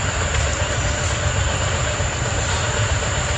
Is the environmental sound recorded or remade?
recorded